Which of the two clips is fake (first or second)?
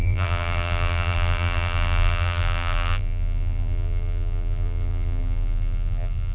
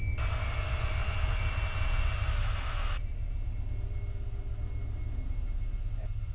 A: first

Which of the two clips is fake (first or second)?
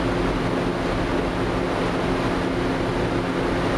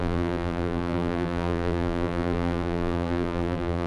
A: second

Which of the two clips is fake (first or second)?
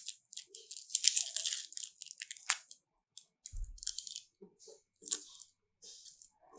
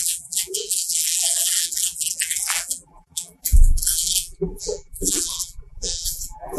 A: second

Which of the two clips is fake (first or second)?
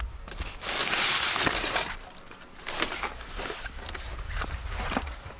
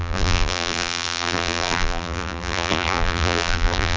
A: second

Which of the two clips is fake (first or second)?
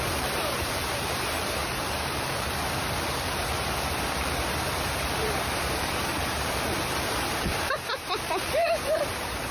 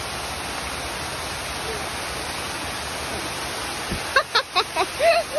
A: first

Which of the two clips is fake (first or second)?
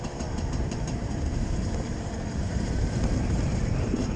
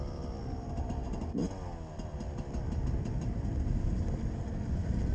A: first